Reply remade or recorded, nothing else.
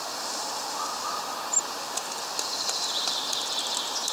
recorded